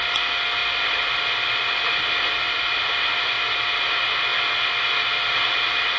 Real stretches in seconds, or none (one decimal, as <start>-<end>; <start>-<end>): 0.0-6.0